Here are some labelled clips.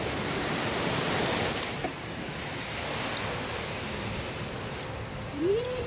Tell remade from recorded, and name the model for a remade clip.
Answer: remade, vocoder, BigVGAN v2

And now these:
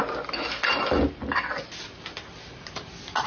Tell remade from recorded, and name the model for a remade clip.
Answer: recorded